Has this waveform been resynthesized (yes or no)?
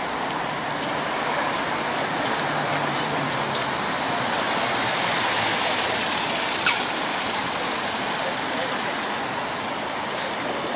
no